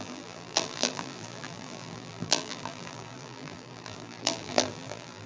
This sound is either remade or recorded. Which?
remade